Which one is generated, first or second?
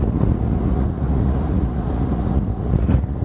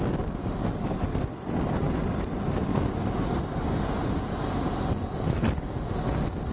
first